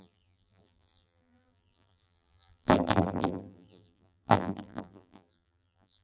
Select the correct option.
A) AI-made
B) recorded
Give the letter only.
A